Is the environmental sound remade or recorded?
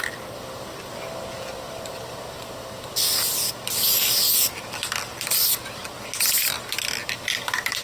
recorded